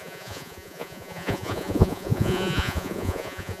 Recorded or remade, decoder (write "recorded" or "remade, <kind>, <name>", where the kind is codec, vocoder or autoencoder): remade, vocoder, Vocos